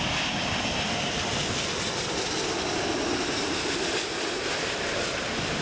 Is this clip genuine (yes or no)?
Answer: yes